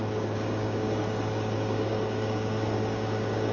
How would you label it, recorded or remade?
remade